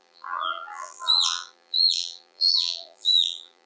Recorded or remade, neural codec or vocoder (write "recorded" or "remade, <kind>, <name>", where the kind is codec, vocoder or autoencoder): remade, vocoder, BigVGAN v2